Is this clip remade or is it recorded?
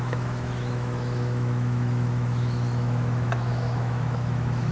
remade